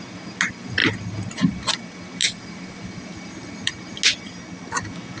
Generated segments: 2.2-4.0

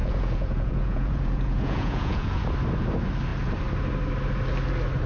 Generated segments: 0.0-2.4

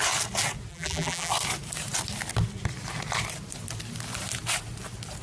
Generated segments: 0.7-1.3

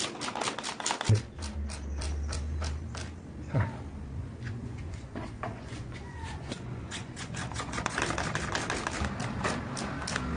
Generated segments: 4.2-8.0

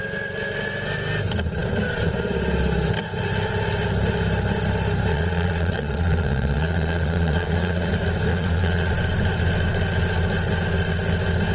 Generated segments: 5.1-7.9; 8.3-8.9

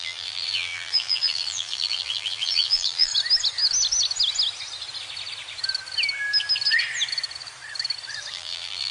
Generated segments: 0.0-3.1; 8.3-8.9